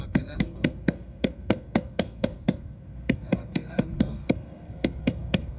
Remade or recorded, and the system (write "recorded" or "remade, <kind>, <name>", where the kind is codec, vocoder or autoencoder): remade, codec, SNAC